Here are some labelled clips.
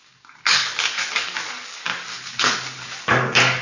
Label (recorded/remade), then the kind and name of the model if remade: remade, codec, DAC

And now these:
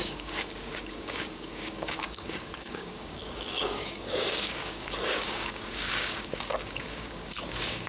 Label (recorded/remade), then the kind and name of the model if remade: remade, codec, DAC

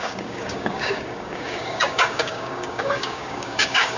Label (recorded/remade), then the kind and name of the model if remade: remade, codec, DAC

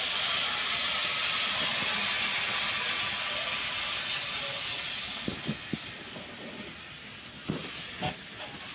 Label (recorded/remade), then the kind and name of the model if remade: recorded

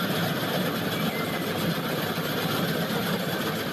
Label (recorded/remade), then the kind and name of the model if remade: recorded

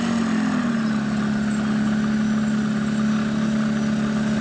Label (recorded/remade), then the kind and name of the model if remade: recorded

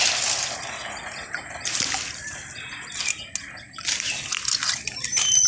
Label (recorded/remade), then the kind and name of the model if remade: recorded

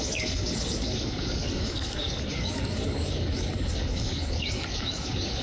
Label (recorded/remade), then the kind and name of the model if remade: remade, codec, DAC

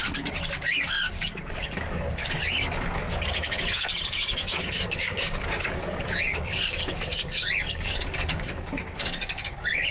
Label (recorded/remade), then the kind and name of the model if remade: remade, codec, DAC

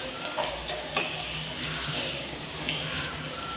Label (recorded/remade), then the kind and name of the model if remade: remade, codec, DAC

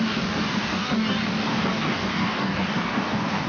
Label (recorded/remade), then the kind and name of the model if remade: remade, codec, DAC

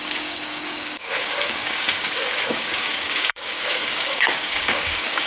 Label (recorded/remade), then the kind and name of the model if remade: remade, codec, DAC